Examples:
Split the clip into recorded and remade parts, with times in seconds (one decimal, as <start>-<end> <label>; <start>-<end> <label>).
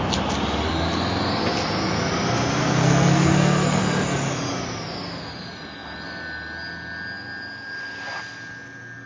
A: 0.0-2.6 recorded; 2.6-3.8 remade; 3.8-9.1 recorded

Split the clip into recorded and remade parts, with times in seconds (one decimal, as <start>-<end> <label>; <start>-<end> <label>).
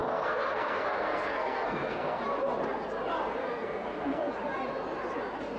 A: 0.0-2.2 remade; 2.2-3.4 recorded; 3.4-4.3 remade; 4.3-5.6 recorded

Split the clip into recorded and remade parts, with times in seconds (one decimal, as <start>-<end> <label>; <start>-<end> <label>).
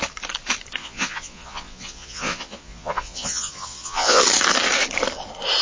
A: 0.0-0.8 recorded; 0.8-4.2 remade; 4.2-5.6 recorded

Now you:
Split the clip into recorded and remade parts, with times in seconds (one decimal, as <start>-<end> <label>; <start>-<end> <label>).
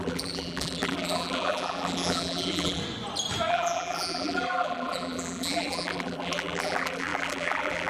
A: 0.0-2.8 remade; 2.8-3.5 recorded; 3.5-7.9 remade